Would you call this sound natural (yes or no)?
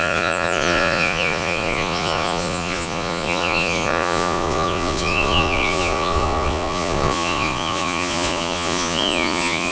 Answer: no